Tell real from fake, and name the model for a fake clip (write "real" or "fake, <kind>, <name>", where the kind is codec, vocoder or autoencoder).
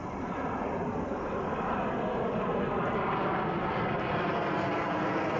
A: real